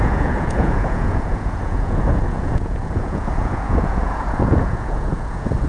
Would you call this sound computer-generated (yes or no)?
yes